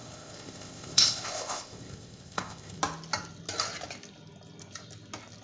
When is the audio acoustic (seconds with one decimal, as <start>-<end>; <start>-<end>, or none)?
2.8-5.4